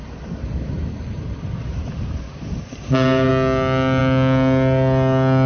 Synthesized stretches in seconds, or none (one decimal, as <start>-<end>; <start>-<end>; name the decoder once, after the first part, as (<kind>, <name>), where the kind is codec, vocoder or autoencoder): 0.0-3.3 (vocoder, BigVGAN v2)